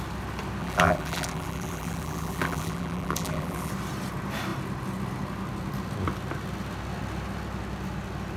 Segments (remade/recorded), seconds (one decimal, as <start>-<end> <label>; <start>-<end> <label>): 0.0-0.6 recorded; 0.6-3.7 remade; 3.7-8.4 recorded